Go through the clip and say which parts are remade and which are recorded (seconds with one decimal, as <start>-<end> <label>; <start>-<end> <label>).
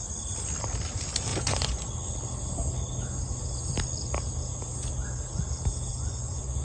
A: 0.0-1.3 recorded; 1.3-1.8 remade; 1.8-5.9 recorded; 5.9-6.6 remade